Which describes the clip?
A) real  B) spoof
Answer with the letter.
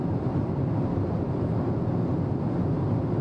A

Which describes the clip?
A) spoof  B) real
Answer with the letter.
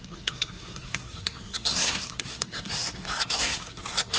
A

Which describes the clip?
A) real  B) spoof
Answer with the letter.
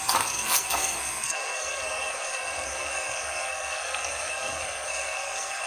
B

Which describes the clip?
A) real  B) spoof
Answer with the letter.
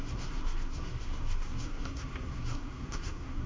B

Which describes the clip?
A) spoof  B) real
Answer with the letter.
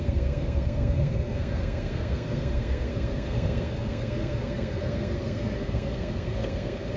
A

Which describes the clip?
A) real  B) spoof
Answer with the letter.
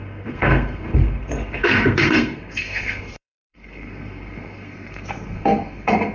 B